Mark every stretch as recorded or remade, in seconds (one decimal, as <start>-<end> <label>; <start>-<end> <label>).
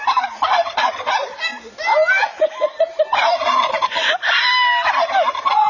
0.0-5.7 recorded